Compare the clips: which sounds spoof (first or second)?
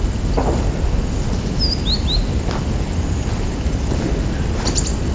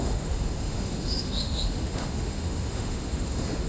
second